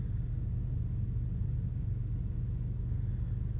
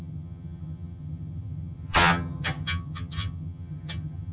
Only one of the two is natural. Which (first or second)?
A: first